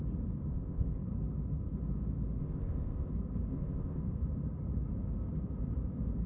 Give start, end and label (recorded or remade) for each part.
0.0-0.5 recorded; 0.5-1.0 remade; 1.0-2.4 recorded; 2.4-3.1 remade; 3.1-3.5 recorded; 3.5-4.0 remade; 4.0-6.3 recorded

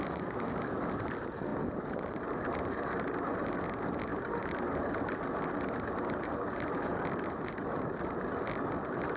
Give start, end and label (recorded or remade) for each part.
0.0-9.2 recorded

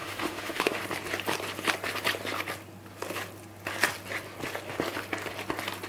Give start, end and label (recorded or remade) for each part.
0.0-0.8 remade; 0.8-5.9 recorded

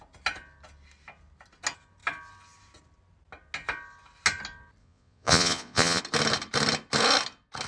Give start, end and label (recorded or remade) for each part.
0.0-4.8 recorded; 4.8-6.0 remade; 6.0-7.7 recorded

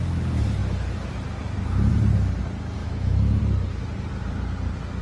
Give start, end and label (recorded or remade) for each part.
0.0-2.8 recorded; 2.8-3.4 remade; 3.4-5.0 recorded

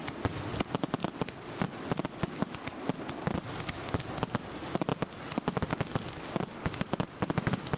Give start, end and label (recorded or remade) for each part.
0.0-1.0 recorded; 1.0-2.4 remade; 2.4-7.8 recorded

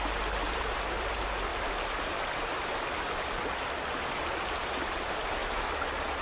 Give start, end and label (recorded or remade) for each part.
0.0-1.5 remade; 1.5-4.1 recorded; 4.1-5.4 remade; 5.4-6.2 recorded

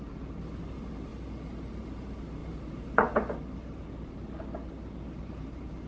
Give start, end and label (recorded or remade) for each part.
0.0-1.1 remade; 1.1-1.7 recorded; 1.7-5.9 remade